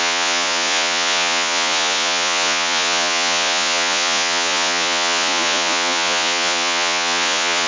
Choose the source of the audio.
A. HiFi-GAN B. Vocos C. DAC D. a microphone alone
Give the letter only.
B